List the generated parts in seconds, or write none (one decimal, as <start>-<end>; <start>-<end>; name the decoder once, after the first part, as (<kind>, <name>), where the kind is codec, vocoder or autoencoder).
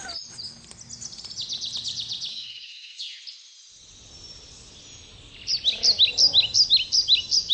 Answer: 2.3-3.0 (codec, SNAC)